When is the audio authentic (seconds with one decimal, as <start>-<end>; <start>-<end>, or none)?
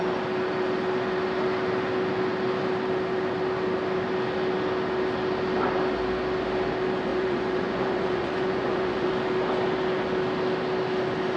0.0-7.1; 9.1-11.4